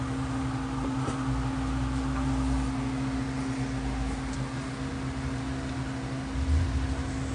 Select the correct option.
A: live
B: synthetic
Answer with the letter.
A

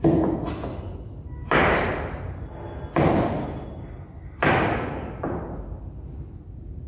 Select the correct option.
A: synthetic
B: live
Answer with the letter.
B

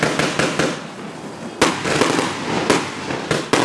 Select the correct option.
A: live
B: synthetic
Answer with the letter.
A